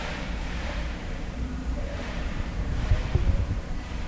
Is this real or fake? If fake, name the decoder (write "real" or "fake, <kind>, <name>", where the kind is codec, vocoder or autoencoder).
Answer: fake, vocoder, BigVGAN v2